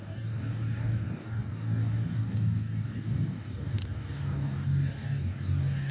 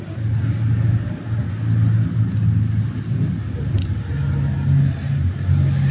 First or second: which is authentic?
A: second